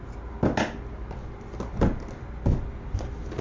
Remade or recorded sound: recorded